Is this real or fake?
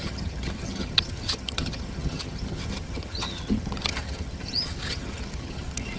fake